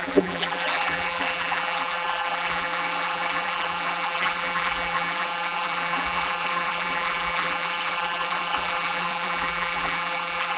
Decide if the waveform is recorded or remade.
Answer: remade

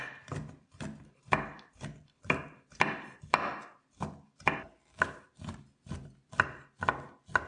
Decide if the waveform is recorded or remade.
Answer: recorded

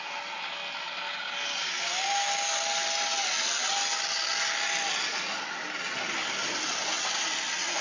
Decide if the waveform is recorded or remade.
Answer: recorded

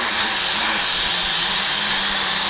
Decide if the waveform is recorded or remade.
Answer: recorded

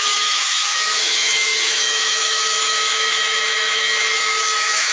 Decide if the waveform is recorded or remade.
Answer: remade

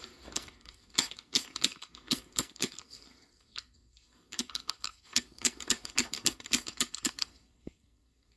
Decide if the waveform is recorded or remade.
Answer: remade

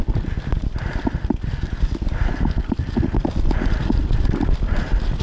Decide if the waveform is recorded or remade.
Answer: recorded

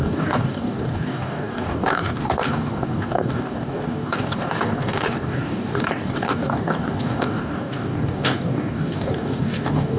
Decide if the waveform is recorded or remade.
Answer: remade